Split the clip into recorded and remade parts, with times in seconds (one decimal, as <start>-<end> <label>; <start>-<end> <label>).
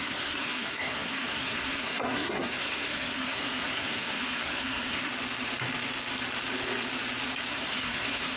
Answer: 0.0-5.1 remade; 5.1-7.5 recorded; 7.5-8.4 remade